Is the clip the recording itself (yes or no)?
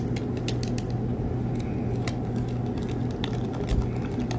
yes